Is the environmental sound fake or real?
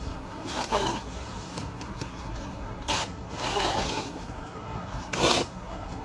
fake